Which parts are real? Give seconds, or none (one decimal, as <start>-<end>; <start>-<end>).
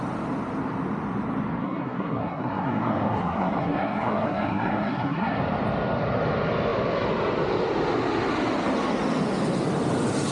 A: 0.0-1.6; 5.4-10.3